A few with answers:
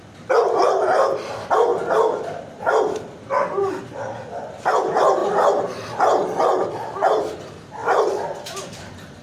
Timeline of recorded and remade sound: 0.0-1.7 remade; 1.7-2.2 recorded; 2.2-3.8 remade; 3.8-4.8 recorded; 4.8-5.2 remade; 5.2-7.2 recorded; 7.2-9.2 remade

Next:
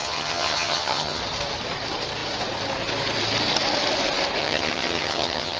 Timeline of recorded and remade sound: 0.0-1.2 remade; 1.2-4.4 recorded; 4.4-5.6 remade

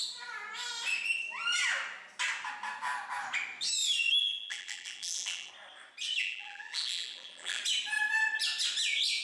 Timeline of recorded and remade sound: 0.0-4.2 recorded; 4.2-5.5 remade; 5.5-6.2 recorded; 6.2-7.6 remade; 7.6-9.2 recorded